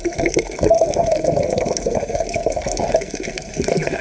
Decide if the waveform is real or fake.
fake